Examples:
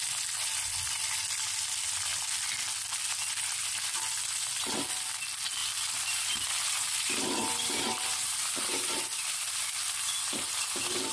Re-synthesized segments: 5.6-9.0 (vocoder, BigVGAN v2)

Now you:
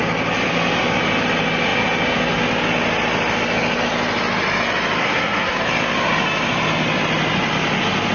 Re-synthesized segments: 5.0-5.6 (codec, SNAC)